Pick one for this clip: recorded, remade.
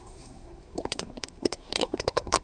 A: remade